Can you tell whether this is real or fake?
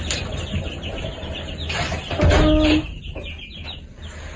real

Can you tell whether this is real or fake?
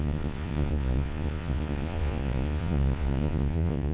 fake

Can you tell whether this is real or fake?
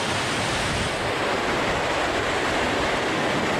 real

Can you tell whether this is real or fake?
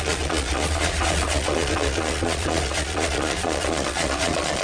fake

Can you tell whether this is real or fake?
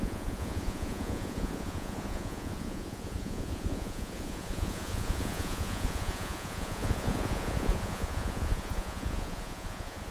fake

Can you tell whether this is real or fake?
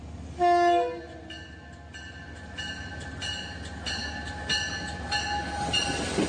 real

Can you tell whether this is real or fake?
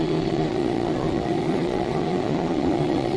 fake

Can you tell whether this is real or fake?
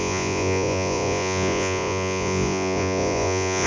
fake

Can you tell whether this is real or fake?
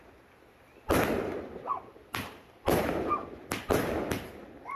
real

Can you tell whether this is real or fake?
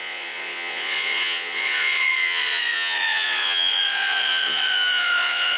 fake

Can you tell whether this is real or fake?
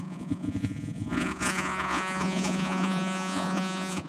fake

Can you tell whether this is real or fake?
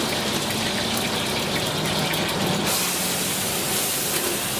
real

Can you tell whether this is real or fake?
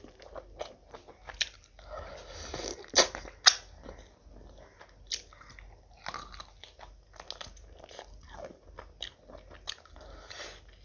real